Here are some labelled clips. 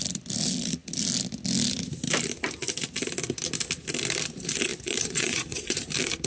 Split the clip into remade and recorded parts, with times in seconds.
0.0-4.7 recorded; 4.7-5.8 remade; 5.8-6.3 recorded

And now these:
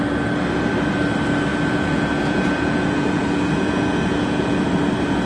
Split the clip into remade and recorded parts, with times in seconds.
0.0-1.5 recorded; 1.5-4.7 remade; 4.7-5.3 recorded

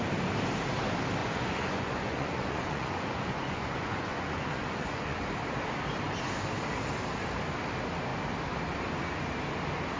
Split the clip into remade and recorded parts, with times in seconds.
0.0-1.2 recorded; 1.2-5.3 remade; 5.3-10.0 recorded

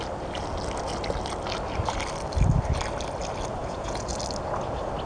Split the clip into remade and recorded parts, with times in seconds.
0.0-3.6 recorded; 3.6-4.1 remade; 4.1-5.1 recorded

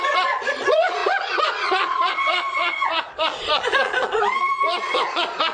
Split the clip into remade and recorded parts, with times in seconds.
0.0-5.5 remade

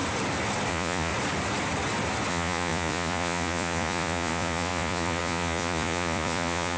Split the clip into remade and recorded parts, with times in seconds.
0.0-0.7 recorded; 0.7-1.1 remade; 1.1-2.3 recorded; 2.3-6.8 remade

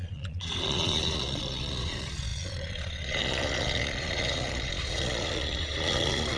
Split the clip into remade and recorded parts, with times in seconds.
0.0-6.4 remade